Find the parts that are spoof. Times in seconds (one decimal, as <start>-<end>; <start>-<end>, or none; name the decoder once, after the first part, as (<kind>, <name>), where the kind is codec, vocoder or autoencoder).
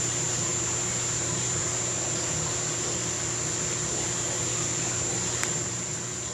0.0-0.5 (vocoder, BigVGAN v2); 1.2-1.6; 5.1-6.3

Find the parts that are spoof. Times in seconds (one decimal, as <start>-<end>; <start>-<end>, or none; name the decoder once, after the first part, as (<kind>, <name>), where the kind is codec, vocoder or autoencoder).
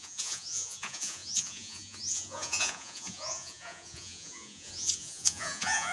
0.0-5.9 (vocoder, Vocos)